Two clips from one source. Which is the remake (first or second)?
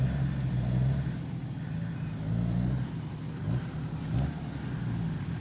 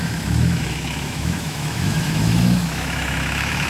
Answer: second